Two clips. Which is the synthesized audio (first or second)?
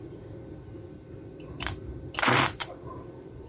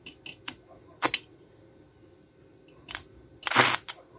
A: first